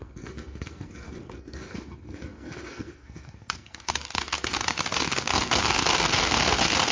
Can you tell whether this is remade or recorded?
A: remade